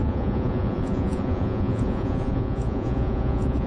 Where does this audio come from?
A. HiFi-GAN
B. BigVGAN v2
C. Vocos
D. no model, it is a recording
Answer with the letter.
C